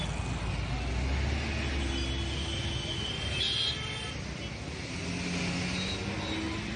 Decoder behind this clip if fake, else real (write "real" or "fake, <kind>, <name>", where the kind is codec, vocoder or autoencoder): real